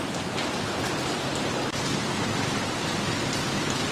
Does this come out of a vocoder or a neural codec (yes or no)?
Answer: no